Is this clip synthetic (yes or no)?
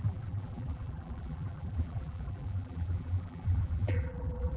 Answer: yes